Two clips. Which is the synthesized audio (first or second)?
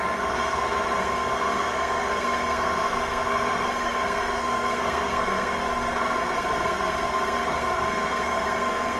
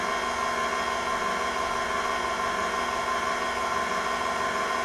first